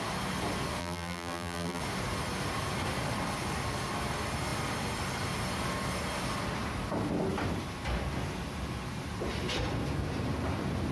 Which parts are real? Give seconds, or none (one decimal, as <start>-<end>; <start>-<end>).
0.0-0.8; 1.8-10.9